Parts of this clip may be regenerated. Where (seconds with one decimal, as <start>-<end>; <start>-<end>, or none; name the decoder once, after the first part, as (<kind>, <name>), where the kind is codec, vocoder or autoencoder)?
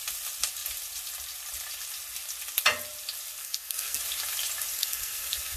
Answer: 3.4-4.0 (codec, SNAC); 4.7-5.6